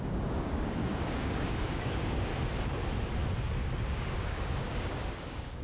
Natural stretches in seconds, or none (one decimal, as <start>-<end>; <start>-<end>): 2.3-3.8